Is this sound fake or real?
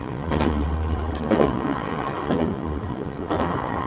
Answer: fake